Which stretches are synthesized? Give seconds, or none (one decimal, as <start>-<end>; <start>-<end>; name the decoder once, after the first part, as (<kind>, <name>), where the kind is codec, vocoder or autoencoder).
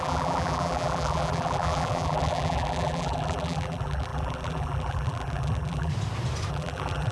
0.0-5.9 (vocoder, BigVGAN v2); 6.5-7.1